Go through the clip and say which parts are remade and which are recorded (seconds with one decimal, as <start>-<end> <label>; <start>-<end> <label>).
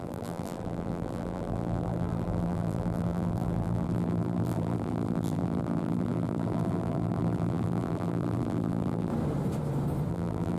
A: 0.0-9.1 remade; 9.1-10.1 recorded; 10.1-10.6 remade